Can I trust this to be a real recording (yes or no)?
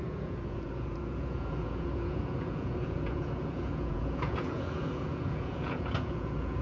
no